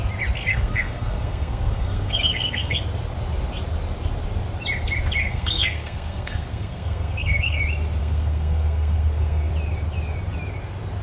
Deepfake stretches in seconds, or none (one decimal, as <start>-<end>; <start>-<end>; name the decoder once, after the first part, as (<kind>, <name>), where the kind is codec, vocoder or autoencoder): 0.5-2.8 (codec, SNAC); 5.2-7.6; 8.0-9.5